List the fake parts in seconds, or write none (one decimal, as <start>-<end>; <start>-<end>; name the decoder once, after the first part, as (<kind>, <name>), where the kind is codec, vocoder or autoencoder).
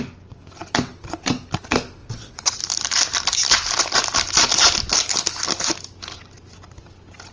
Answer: 2.0-2.6 (vocoder, Vocos)